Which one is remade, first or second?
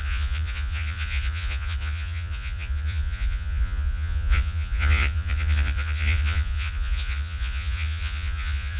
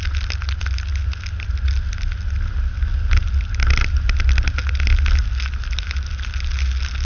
first